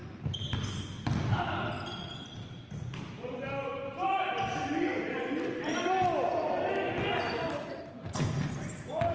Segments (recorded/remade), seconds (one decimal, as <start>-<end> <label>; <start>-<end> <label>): 0.0-2.5 recorded; 2.5-4.9 remade; 4.9-7.6 recorded; 7.6-9.1 remade